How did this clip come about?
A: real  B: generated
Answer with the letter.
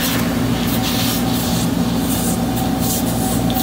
A